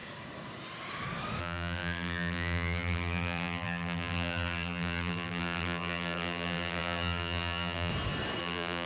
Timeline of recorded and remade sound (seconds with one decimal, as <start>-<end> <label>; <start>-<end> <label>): 0.0-1.4 recorded; 1.4-7.9 remade; 7.9-8.4 recorded; 8.4-8.9 remade